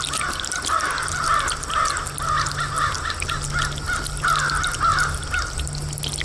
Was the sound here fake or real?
real